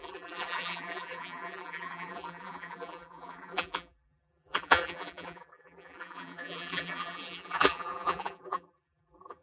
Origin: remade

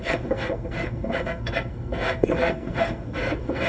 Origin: remade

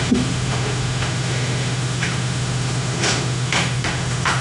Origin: remade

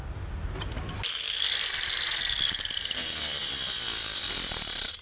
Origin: recorded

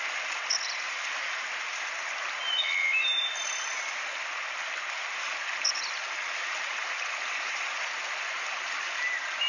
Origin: recorded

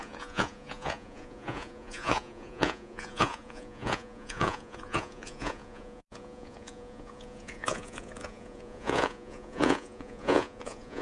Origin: remade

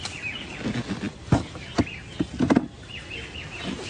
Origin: recorded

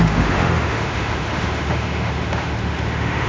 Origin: remade